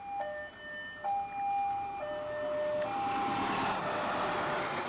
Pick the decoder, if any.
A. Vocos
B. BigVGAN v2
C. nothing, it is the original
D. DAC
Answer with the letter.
C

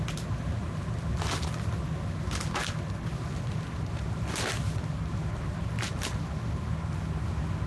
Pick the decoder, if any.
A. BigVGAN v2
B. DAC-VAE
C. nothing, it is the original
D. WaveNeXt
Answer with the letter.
C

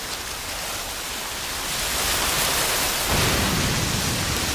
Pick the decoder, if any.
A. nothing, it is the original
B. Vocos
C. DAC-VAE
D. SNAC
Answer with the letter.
A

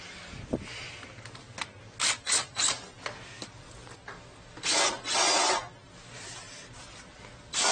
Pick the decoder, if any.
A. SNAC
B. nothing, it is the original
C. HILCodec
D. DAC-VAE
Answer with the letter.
B